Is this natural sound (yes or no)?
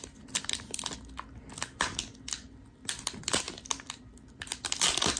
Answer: yes